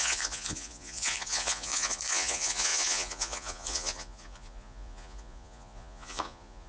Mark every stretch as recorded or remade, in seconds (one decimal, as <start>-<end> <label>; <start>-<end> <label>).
0.0-6.7 remade